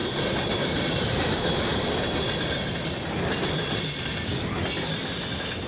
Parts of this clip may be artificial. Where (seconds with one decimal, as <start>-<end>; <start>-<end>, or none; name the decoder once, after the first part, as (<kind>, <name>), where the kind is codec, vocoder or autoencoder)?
0.0-4.3 (vocoder, BigVGAN v2)